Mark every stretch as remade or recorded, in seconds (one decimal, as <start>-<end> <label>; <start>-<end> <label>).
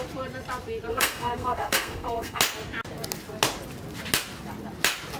0.0-0.9 recorded; 0.9-2.4 remade; 2.4-5.2 recorded